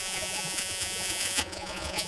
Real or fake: fake